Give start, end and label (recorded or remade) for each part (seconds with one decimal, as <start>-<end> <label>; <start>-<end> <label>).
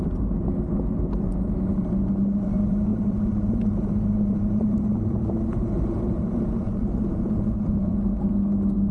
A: 0.0-2.9 recorded; 2.9-7.9 remade; 7.9-8.9 recorded